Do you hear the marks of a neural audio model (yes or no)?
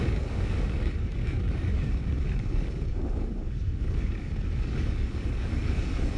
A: yes